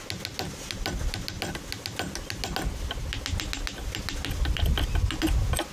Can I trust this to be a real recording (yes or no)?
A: yes